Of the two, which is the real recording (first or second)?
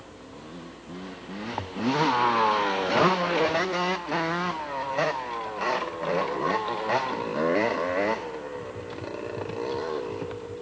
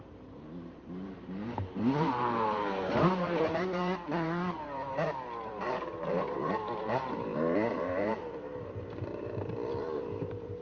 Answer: first